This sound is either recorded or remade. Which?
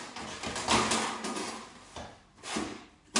recorded